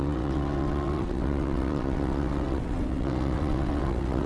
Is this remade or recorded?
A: remade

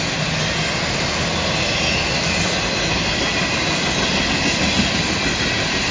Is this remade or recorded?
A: recorded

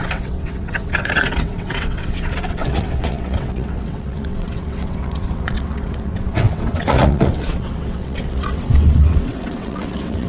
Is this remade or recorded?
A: remade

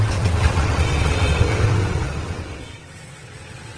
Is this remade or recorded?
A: remade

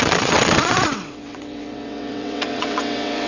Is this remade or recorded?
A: remade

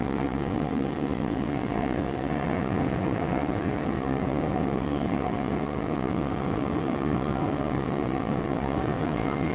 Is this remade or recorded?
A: remade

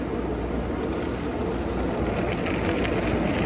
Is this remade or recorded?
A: recorded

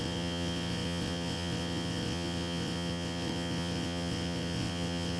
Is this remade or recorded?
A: remade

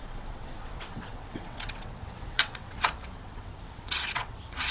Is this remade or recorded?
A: remade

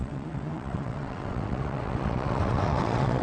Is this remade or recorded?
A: remade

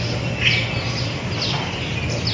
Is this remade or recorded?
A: recorded